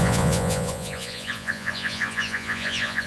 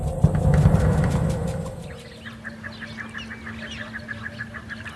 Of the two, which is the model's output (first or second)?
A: first